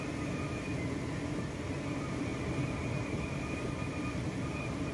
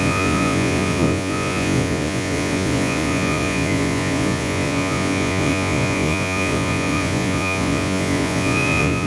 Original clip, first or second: first